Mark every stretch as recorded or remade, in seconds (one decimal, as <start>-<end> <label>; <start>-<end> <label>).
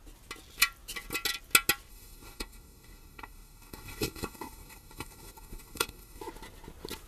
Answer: 0.0-1.9 recorded; 1.9-6.2 remade; 6.2-7.1 recorded